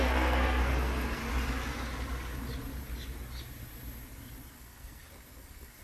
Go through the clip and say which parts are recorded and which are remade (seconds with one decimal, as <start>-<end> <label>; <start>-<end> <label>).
0.0-1.2 remade; 1.2-4.5 recorded; 4.5-5.8 remade

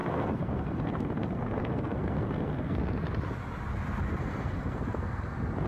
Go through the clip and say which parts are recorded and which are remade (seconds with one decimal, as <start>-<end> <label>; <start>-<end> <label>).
0.0-2.8 remade; 2.8-4.2 recorded; 4.2-5.7 remade

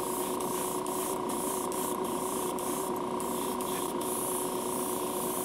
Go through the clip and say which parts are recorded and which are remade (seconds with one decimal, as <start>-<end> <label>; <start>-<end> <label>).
0.0-1.0 recorded; 1.0-4.2 remade; 4.2-5.4 recorded

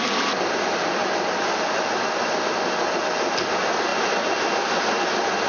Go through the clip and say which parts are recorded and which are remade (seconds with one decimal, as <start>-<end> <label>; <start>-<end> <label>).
0.0-1.0 recorded; 1.0-2.1 remade; 2.1-5.5 recorded

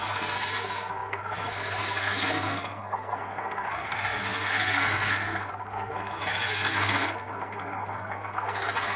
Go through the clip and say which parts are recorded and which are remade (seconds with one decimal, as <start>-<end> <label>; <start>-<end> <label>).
0.0-9.0 remade

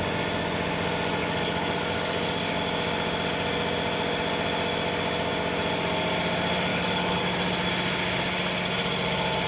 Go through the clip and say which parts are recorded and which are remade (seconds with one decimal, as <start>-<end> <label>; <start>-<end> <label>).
0.0-1.2 recorded; 1.2-2.6 remade; 2.6-6.7 recorded; 6.7-7.2 remade; 7.2-9.5 recorded